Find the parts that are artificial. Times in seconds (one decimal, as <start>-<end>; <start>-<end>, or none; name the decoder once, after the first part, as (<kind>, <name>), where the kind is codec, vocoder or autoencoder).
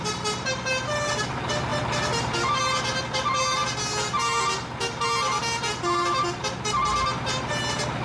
none